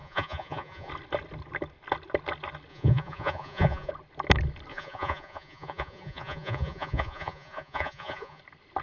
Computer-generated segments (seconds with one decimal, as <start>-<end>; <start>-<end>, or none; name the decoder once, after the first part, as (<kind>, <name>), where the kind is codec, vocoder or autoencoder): 0.0-0.9 (vocoder, Vocos); 2.7-3.9; 4.7-8.4